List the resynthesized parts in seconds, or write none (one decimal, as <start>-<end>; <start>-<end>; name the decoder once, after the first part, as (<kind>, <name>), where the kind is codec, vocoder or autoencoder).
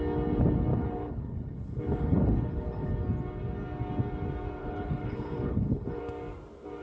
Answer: 0.7-2.9 (codec, HILCodec); 4.6-6.0